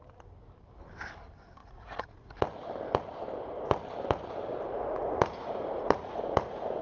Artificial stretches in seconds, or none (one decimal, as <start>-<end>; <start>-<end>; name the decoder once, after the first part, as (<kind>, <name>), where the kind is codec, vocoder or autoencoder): 1.6-2.3 (vocoder, Vocos); 4.5-6.8